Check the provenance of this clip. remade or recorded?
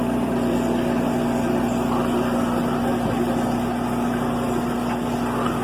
remade